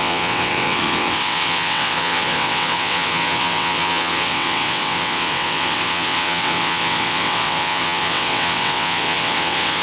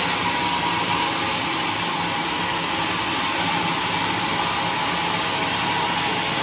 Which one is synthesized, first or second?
first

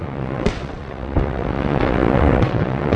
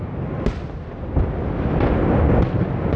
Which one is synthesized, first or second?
first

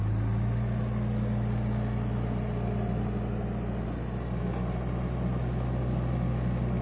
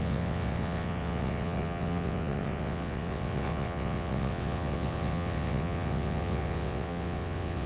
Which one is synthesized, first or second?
second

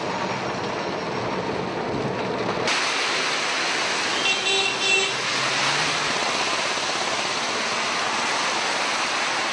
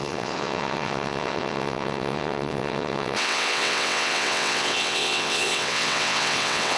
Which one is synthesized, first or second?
second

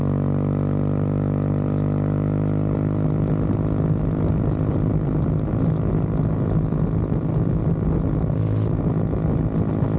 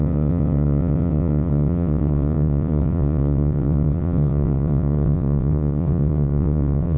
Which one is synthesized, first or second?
second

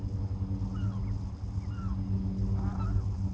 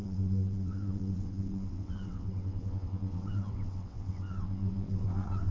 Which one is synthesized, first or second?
second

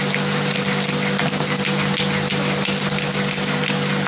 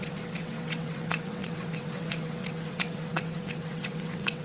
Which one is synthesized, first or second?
second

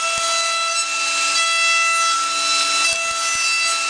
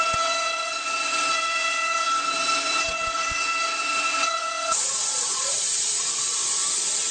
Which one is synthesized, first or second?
second